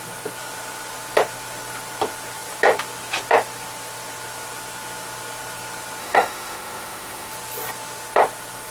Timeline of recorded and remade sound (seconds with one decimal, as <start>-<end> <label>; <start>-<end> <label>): 0.0-6.0 recorded; 6.0-7.3 remade; 7.3-8.7 recorded